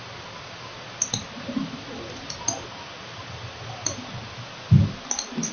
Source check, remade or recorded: recorded